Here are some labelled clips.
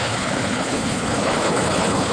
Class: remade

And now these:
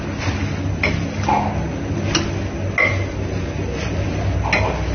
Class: recorded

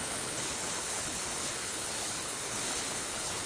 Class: remade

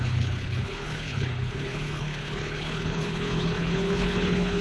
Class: remade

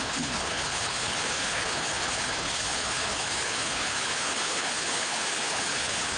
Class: remade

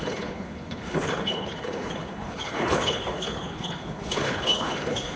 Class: remade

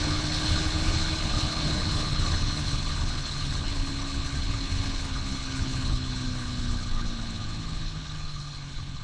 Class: remade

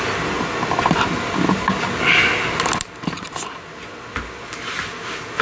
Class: recorded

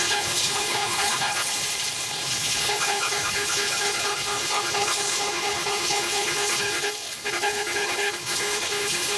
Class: remade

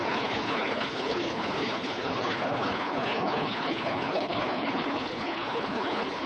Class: remade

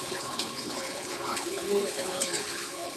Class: remade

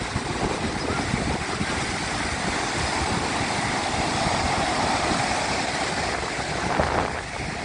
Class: recorded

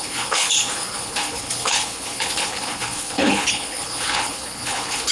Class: remade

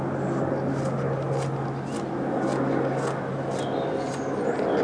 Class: recorded